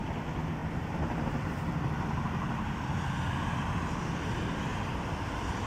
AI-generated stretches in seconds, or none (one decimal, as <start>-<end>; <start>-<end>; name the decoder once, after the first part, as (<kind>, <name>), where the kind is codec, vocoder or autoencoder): none